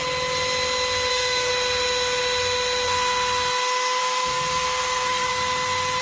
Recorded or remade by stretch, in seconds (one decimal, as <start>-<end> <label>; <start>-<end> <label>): 0.0-1.1 recorded; 1.1-1.5 remade; 1.5-4.0 recorded; 4.0-5.3 remade; 5.3-6.0 recorded